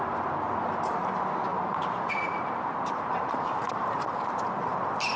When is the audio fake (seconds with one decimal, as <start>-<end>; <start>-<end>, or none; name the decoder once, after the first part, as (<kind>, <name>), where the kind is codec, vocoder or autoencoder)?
1.5-4.6 (vocoder, BigVGAN v2)